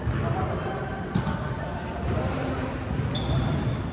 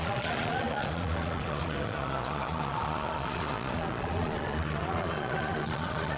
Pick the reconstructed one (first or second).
second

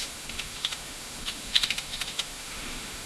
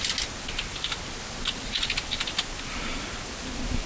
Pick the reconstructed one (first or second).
first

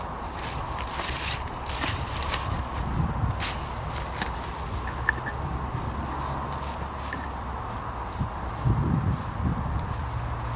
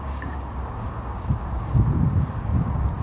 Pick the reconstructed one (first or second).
second